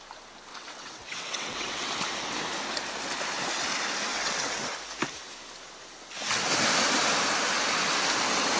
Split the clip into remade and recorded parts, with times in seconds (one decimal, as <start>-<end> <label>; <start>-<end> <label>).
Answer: 0.0-0.5 recorded; 0.5-1.9 remade; 1.9-4.1 recorded; 4.1-4.6 remade; 4.6-8.6 recorded